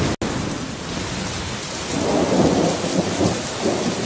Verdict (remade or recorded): recorded